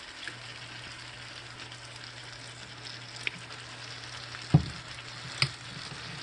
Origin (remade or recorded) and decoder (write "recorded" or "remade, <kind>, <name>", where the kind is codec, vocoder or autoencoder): recorded